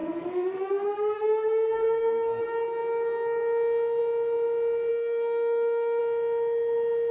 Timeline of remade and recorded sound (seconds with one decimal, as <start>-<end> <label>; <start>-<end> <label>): 0.0-2.4 remade; 2.4-4.9 recorded; 4.9-6.0 remade; 6.0-7.1 recorded